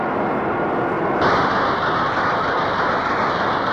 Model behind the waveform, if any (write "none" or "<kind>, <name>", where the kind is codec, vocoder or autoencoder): none